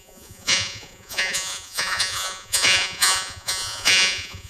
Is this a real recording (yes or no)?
no